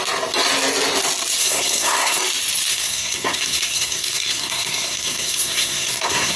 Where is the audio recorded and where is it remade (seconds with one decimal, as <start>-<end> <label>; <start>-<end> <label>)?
0.0-1.4 recorded; 1.4-2.2 remade; 2.2-2.7 recorded; 2.7-6.4 remade